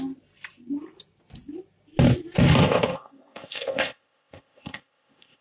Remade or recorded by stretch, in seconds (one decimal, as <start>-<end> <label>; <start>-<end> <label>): 0.0-2.6 recorded; 2.6-5.4 remade